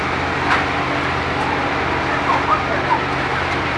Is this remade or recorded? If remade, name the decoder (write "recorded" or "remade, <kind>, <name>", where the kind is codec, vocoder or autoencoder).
recorded